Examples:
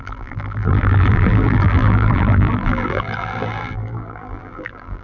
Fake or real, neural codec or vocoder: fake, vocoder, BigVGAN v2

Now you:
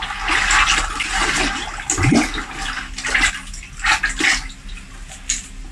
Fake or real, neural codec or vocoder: real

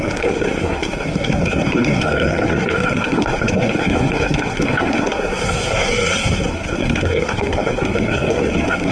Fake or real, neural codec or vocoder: fake, codec, SNAC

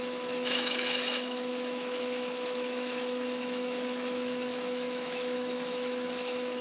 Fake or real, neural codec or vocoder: fake, autoencoder, DAC-VAE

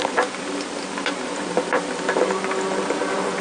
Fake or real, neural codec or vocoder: real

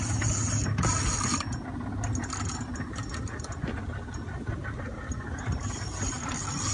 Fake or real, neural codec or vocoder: real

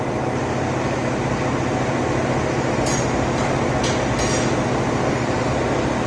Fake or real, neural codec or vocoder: real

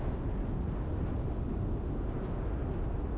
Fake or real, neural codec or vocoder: real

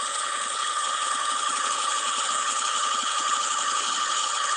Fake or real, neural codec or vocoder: fake, codec, HILCodec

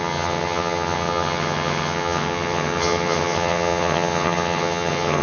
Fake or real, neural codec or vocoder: fake, vocoder, HiFi-GAN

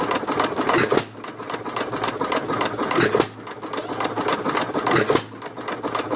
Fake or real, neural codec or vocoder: real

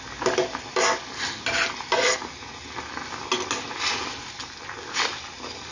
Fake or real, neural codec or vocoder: real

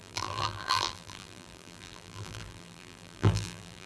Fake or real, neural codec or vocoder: fake, vocoder, BigVGAN v2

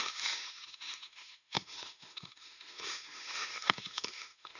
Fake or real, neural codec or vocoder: fake, autoencoder, DAC-VAE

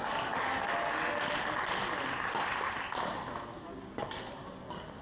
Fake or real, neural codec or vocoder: real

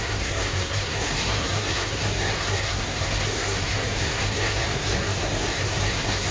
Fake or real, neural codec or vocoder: fake, codec, SNAC